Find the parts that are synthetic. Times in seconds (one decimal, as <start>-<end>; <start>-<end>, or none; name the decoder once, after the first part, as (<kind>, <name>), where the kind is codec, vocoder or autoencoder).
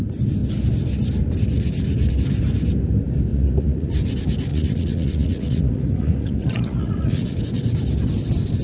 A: 3.3-3.9 (vocoder, Vocos); 4.5-7.4